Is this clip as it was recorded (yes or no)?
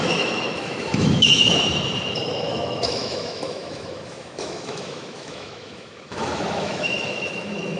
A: no